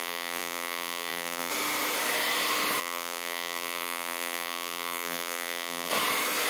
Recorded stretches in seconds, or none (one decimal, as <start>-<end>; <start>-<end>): 1.5-2.8; 5.9-6.5